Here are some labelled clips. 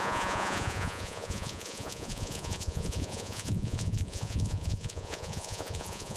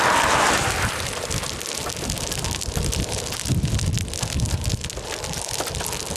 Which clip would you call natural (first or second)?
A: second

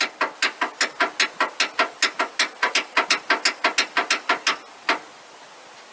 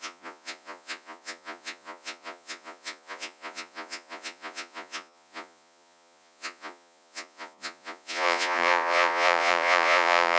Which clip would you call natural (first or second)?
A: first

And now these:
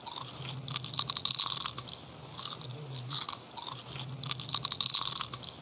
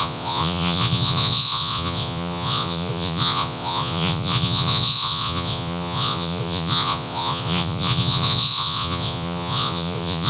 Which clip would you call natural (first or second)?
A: first